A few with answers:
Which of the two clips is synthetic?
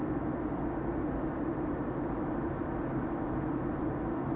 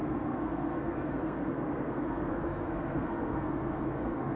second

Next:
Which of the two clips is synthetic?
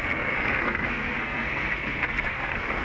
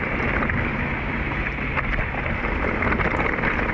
first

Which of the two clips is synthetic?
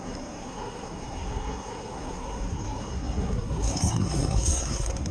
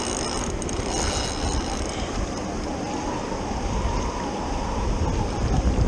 first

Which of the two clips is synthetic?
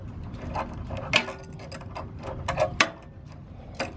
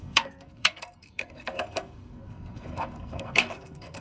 second